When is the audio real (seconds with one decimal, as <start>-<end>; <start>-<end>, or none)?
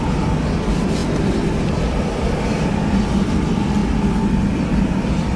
0.0-5.4